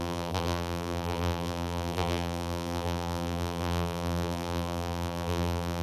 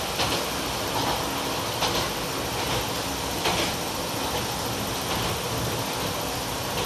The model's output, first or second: first